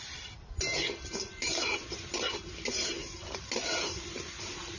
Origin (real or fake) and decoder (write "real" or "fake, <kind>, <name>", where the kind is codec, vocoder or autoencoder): real